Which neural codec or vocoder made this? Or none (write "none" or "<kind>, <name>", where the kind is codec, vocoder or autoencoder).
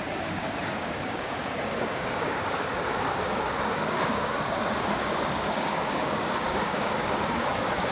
codec, DAC